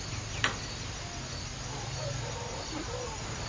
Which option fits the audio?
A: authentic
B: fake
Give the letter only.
A